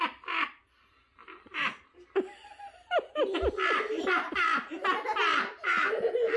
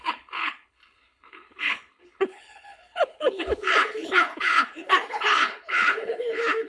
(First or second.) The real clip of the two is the first